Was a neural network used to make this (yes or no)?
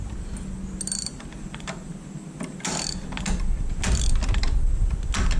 no